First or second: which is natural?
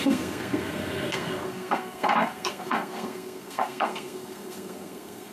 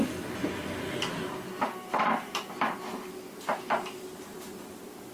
second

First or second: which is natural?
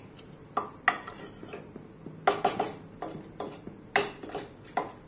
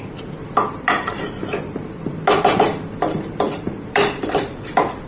first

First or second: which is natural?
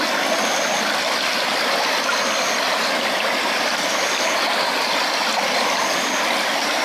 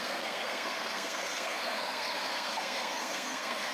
first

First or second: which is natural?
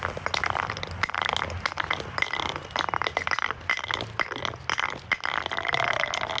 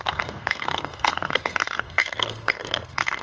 first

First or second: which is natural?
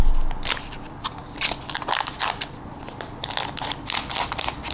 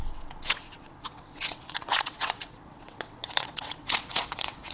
first